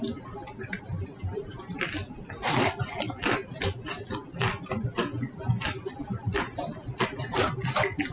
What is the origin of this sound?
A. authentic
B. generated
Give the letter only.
A